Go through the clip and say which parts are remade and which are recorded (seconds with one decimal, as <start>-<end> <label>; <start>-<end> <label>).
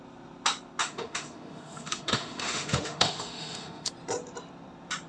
0.0-0.8 recorded; 0.8-3.9 remade; 3.9-5.1 recorded